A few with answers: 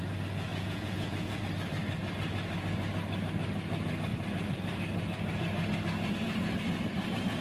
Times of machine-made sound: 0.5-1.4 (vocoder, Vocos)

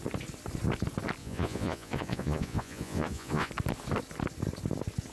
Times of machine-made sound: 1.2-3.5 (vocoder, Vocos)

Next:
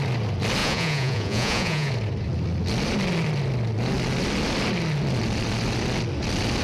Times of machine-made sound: 0.6-1.9 (vocoder, Vocos)

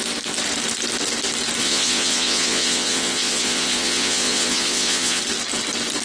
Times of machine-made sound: 1.6-5.2 (vocoder, Vocos)